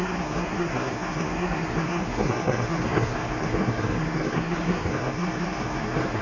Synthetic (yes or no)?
yes